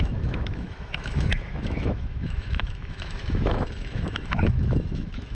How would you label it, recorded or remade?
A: remade